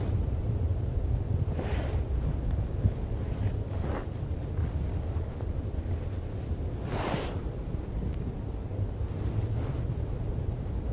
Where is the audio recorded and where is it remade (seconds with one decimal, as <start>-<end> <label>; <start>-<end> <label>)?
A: 0.0-0.7 remade; 0.7-3.3 recorded; 3.3-8.7 remade; 8.7-9.4 recorded; 9.4-10.9 remade